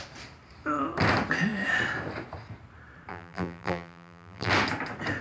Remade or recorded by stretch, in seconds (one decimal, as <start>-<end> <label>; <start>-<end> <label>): 0.0-3.1 recorded; 3.1-4.5 remade; 4.5-5.2 recorded